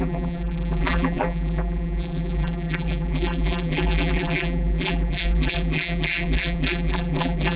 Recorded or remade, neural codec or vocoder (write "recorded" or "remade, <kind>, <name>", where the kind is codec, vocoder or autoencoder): remade, vocoder, BigVGAN v2